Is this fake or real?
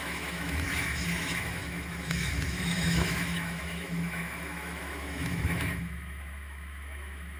fake